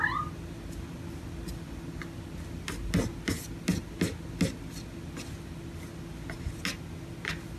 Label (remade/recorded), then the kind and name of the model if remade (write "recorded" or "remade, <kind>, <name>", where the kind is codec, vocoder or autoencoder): recorded